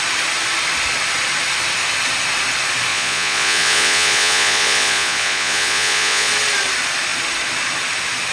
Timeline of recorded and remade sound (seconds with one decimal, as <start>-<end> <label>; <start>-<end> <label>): 0.0-2.9 recorded; 2.9-6.3 remade; 6.3-8.3 recorded